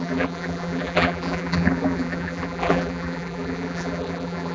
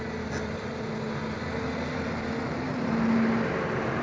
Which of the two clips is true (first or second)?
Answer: second